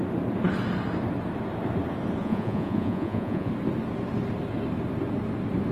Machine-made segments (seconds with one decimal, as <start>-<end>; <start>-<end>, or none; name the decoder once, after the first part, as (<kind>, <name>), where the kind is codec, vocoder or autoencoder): 2.2-3.5 (vocoder, Vocos)